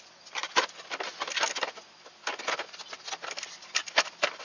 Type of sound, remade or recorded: recorded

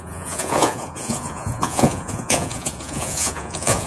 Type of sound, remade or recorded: remade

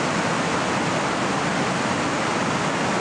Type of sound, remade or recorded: recorded